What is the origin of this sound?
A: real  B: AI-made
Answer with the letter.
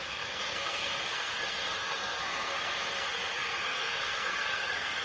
B